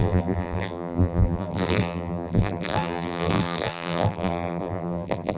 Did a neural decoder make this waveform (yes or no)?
yes